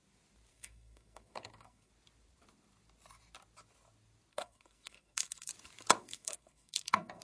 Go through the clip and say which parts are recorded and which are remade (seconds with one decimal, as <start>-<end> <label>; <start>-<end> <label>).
0.0-0.5 recorded; 0.5-1.9 remade; 1.9-4.3 recorded; 4.3-5.5 remade; 5.5-6.0 recorded; 6.0-7.2 remade